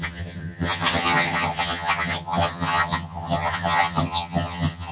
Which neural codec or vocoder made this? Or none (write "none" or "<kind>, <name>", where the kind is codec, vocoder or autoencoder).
vocoder, HiFi-GAN